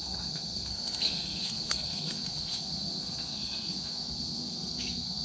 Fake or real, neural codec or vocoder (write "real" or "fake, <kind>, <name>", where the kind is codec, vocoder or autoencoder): fake, codec, SNAC